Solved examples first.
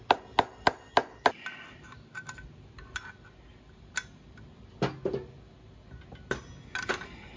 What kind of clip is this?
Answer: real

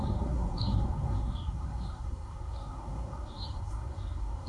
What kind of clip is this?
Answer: fake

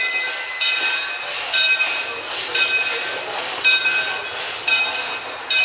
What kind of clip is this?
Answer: real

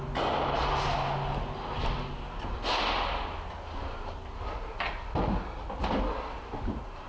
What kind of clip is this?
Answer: real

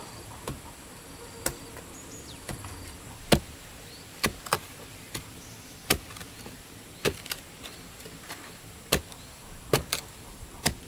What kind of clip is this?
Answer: real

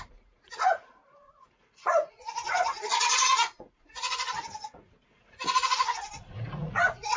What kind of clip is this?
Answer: fake